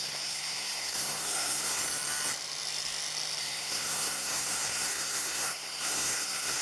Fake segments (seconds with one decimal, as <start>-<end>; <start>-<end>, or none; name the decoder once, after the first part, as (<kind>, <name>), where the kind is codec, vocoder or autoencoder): 0.0-1.8 (codec, SNAC); 3.4-6.6